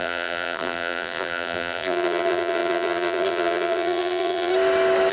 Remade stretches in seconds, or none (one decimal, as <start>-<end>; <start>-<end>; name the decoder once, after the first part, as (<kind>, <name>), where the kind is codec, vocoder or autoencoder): 0.0-4.5 (vocoder, BigVGAN v2)